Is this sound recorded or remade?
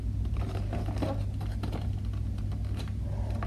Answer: recorded